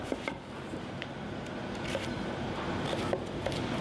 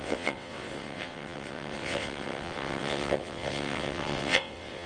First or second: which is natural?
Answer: first